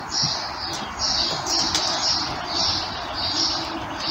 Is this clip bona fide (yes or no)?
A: yes